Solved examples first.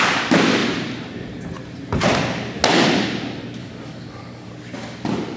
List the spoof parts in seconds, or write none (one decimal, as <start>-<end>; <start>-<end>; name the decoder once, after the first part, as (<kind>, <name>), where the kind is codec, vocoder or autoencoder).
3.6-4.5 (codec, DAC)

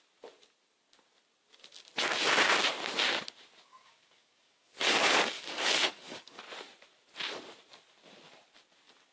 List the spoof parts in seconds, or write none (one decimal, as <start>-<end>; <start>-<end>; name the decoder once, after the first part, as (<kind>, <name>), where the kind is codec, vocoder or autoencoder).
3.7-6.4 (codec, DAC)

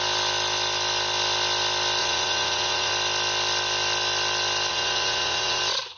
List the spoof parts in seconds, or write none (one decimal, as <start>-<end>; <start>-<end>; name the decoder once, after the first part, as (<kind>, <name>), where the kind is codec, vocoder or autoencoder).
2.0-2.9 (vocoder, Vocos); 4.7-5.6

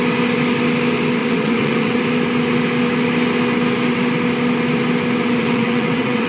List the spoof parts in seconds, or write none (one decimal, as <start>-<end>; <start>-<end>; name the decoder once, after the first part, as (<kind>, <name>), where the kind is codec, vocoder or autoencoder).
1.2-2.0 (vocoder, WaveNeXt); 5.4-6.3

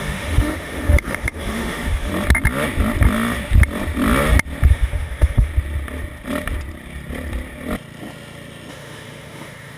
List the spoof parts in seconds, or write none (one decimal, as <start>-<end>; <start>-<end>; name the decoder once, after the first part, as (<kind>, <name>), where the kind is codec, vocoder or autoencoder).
0.0-2.1 (autoencoder, DAC-VAE); 4.7-5.5; 8.7-9.8

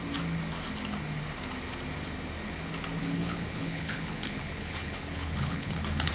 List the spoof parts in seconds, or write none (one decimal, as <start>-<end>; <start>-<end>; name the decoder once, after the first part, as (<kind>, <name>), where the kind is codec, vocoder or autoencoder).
3.0-6.1 (codec, HILCodec)

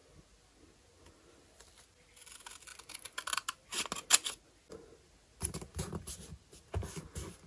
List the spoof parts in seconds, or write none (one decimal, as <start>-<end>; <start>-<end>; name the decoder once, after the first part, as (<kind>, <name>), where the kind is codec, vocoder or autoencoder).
none